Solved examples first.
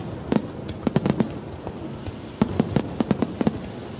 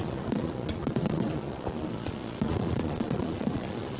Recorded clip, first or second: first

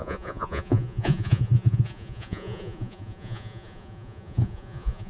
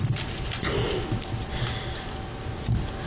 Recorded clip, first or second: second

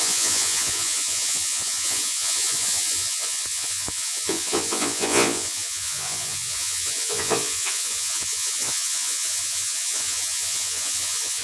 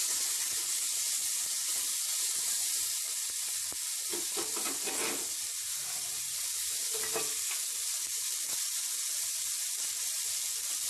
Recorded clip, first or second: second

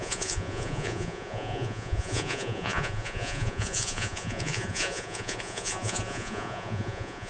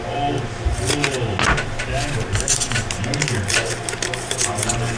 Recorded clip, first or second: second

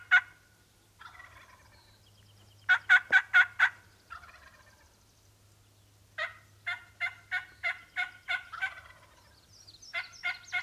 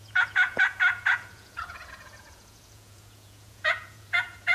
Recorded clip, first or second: first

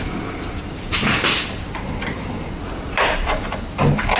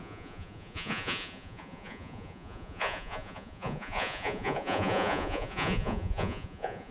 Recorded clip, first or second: first